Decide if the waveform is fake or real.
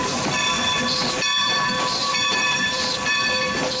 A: fake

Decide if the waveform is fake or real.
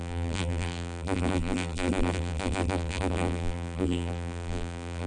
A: fake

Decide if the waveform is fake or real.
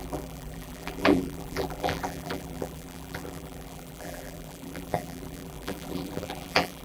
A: fake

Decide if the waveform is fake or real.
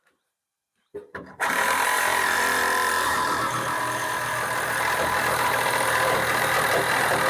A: fake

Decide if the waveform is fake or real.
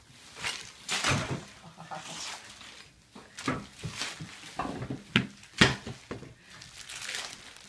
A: real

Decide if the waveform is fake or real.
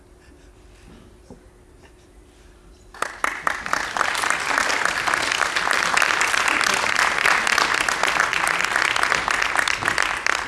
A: real